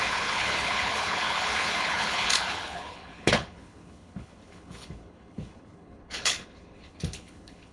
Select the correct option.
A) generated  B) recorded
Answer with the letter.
A